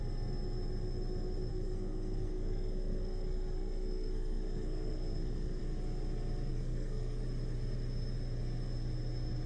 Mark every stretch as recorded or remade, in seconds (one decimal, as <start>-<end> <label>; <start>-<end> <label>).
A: 0.0-1.5 recorded; 1.5-5.6 remade; 5.6-6.5 recorded; 6.5-7.2 remade; 7.2-9.5 recorded